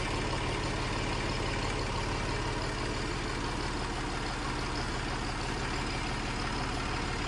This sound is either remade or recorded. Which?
recorded